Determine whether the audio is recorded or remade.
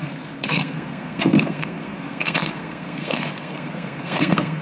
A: remade